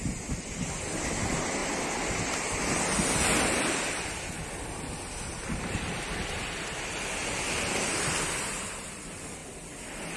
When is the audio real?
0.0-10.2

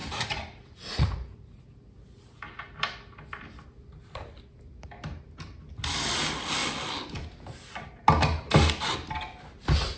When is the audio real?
1.6-10.0

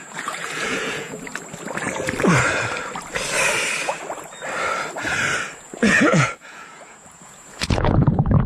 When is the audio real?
1.3-5.6

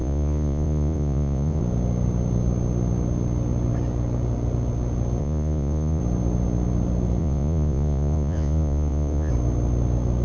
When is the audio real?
1.6-5.2; 6.0-7.2; 9.3-10.2